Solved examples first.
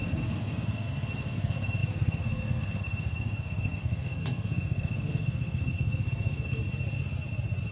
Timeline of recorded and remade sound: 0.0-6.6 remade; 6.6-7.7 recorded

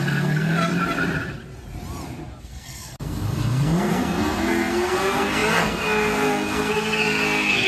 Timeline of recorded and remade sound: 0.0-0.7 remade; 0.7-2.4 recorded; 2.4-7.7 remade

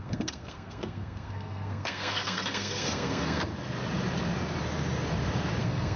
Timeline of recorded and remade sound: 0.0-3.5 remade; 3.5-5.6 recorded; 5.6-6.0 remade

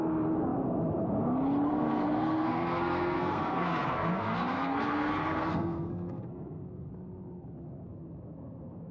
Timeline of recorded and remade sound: 0.0-1.7 recorded; 1.7-6.9 remade; 6.9-8.9 recorded

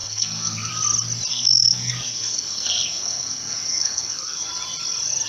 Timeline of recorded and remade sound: 0.0-0.7 remade; 0.7-1.3 recorded; 1.3-4.5 remade; 4.5-5.3 recorded

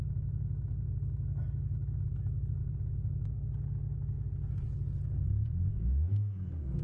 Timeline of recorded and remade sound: 0.0-5.7 recorded; 5.7-6.8 remade